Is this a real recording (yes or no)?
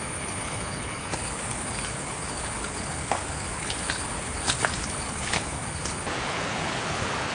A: no